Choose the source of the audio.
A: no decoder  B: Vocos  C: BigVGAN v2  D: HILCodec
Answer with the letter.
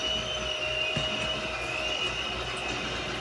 A